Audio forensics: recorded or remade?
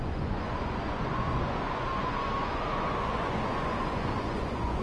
remade